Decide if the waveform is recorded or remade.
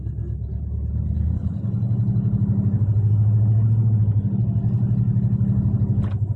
recorded